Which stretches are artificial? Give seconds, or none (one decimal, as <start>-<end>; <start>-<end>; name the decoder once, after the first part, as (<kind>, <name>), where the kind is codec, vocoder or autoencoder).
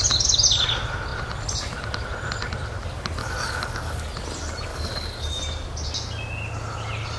3.2-4.1 (codec, DAC); 4.7-5.4